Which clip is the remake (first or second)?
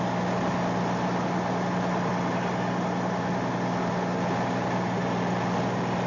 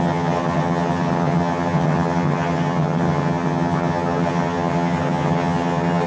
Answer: second